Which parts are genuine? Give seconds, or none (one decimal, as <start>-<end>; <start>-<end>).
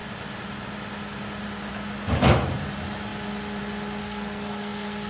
0.0-4.0